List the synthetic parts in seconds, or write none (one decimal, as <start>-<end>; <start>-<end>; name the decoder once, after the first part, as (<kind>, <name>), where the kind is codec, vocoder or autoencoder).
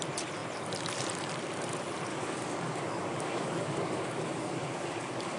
2.1-5.4 (codec, DAC)